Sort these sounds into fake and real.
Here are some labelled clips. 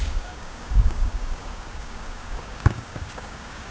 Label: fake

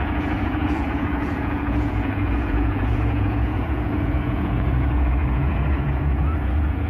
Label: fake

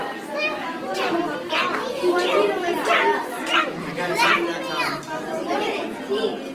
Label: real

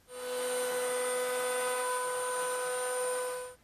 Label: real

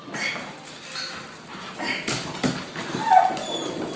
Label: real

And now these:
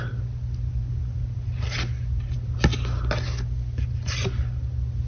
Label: real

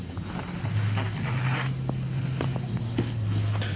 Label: real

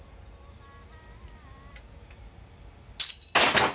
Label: real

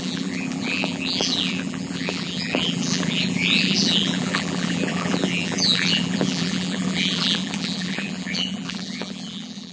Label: fake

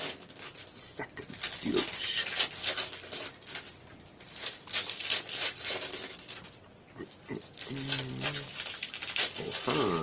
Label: real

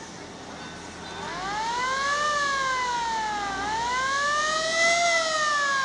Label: real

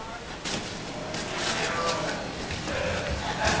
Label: real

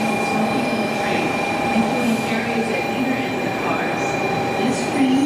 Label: real